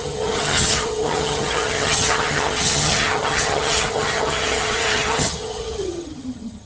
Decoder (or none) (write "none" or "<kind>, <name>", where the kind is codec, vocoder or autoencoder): vocoder, HiFi-GAN